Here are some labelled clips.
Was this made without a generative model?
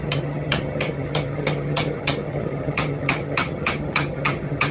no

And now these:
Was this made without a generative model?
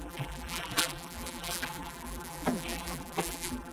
no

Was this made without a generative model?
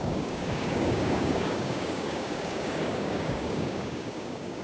no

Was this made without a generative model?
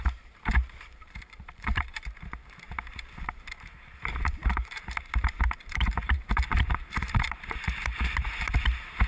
no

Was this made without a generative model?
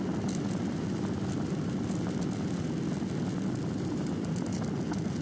yes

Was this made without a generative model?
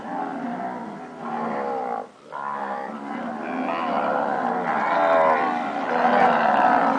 yes